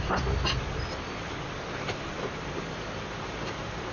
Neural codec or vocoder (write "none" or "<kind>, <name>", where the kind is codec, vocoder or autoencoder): none